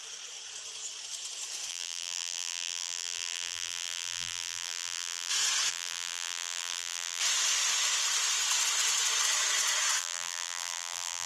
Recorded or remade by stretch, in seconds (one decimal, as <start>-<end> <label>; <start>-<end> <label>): 0.0-1.7 recorded; 1.7-5.3 remade; 5.3-5.7 recorded; 5.7-7.2 remade; 7.2-10.0 recorded; 10.0-11.3 remade